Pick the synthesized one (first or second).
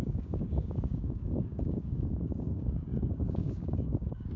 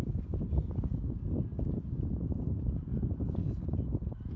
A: first